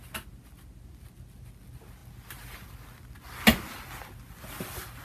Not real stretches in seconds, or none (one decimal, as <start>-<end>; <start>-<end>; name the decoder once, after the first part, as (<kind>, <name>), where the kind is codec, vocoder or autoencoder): none